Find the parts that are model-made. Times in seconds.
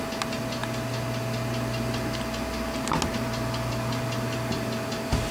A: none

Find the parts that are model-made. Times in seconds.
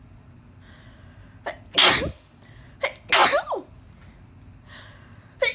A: 3.2-3.9 (vocoder, BigVGAN v2)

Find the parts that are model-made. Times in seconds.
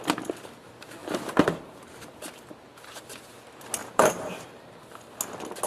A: 1.0-3.0 (vocoder, BigVGAN v2); 3.8-4.5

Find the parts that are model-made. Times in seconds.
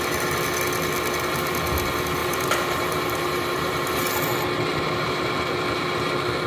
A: 2.2-4.0 (vocoder, BigVGAN v2); 4.7-5.2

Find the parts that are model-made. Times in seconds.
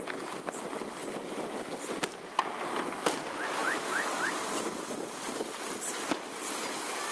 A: none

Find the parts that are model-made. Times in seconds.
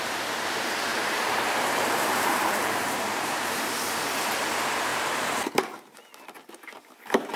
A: 0.9-3.6 (vocoder, BigVGAN v2); 4.9-5.4